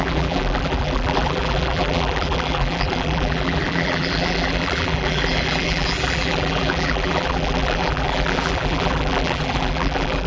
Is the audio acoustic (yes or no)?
no